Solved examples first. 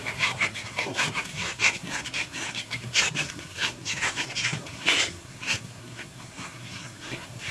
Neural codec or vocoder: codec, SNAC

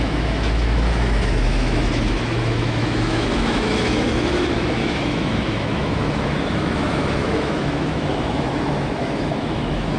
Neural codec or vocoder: autoencoder, DAC-VAE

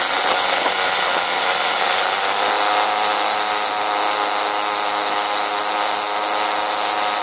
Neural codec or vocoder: none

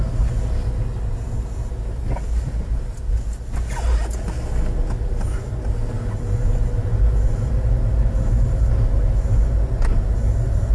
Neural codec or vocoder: none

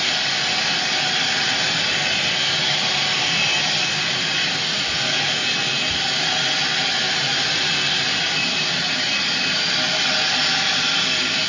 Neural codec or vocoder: none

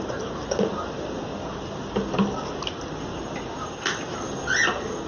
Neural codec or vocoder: none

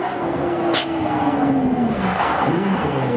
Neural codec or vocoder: codec, SNAC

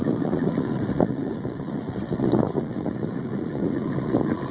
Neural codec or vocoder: vocoder, Vocos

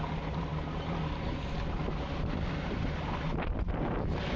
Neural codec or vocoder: none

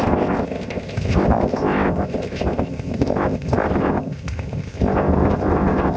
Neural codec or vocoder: codec, ZipCodec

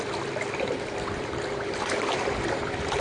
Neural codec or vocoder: none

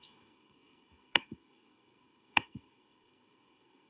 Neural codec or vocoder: codec, SNAC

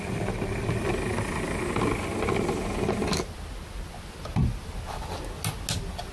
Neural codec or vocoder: none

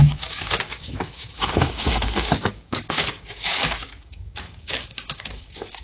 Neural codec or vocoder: codec, DAC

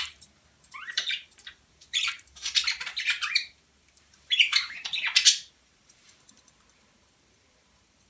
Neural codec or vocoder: vocoder, BigVGAN v2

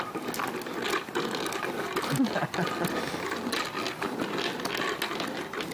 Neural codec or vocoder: none